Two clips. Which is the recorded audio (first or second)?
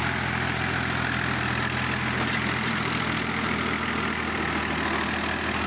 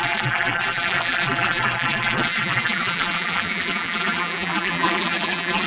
first